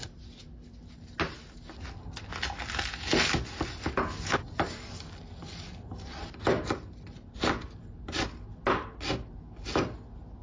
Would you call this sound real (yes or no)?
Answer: yes